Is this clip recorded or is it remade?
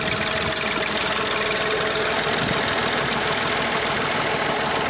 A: recorded